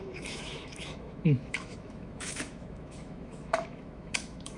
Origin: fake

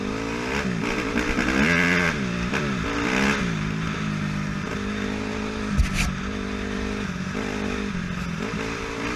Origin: real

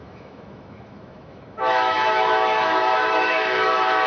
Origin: fake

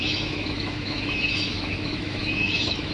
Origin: fake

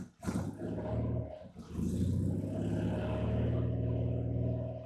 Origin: real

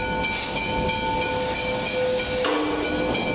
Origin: real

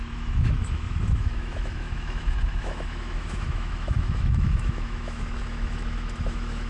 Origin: fake